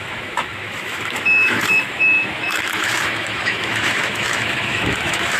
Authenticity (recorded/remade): remade